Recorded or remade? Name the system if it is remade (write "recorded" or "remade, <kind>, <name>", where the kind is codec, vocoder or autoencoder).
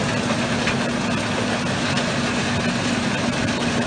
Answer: recorded